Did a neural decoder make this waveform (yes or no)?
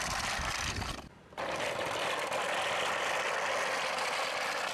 no